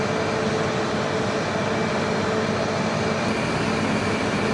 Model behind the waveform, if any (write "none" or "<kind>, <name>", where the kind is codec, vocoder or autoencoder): none